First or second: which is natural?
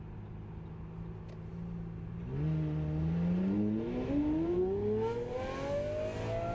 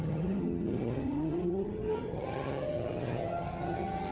first